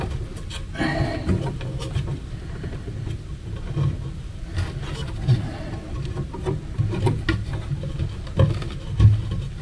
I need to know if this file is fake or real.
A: real